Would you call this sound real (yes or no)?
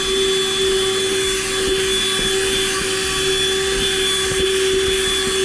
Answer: yes